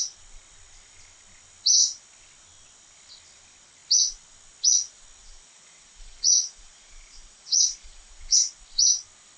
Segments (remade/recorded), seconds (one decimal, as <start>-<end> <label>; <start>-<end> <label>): 0.0-5.2 recorded; 5.2-8.5 remade; 8.5-9.4 recorded